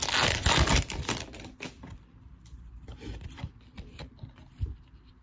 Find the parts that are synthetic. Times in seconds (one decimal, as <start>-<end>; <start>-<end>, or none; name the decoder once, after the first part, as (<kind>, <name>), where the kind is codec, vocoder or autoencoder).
0.7-5.2 (vocoder, BigVGAN v2)